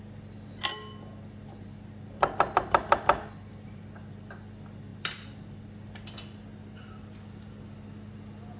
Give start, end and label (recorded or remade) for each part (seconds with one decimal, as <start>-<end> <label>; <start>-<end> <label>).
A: 0.0-8.6 recorded